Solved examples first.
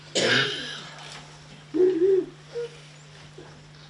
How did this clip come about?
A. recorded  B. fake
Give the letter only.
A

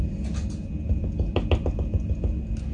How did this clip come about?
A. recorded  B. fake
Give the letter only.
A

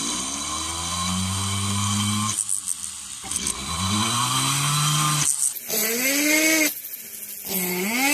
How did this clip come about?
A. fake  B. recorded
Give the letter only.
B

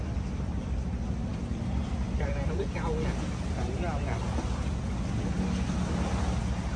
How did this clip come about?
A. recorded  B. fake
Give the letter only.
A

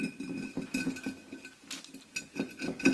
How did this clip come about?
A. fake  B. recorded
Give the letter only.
B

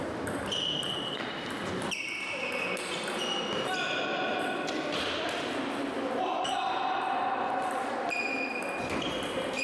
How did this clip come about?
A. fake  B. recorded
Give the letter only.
B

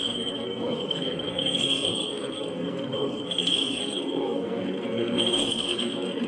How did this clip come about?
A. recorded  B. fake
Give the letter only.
B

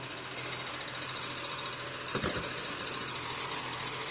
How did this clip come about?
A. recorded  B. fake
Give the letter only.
A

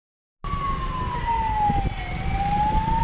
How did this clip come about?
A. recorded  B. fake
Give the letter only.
A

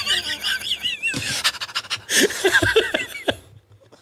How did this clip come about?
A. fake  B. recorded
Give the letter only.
B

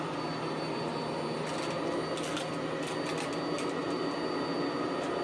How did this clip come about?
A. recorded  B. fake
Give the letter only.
A